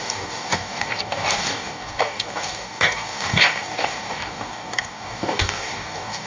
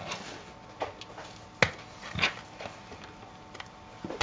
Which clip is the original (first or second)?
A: second